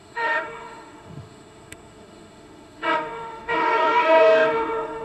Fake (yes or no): yes